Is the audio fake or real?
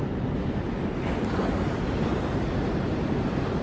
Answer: real